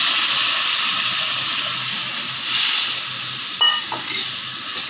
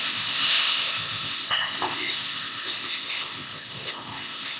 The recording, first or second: first